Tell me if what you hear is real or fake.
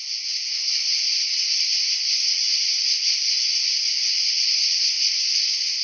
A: real